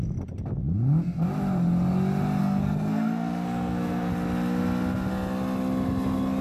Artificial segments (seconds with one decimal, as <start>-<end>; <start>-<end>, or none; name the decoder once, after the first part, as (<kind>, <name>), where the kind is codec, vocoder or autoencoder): 2.4-4.1 (codec, SNAC)